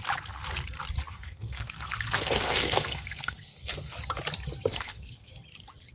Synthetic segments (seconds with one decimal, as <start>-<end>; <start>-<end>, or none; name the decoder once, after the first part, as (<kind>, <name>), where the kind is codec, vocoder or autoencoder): 1.1-3.9 (codec, SNAC); 4.7-5.3